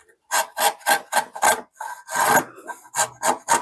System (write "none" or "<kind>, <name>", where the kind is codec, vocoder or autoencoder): none